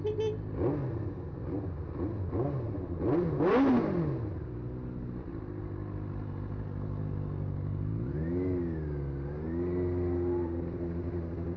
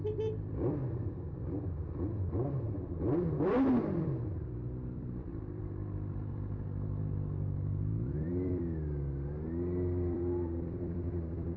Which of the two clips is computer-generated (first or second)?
second